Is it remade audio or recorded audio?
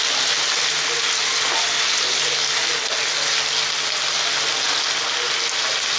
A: recorded